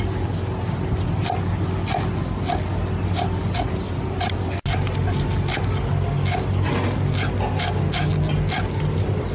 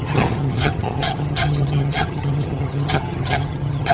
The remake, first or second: second